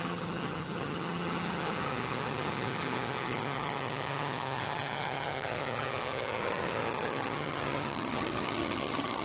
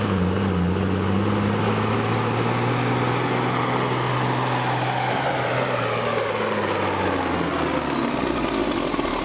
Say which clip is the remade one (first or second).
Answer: first